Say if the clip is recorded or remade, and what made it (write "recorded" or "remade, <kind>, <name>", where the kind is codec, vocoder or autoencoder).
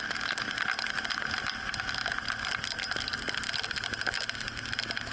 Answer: recorded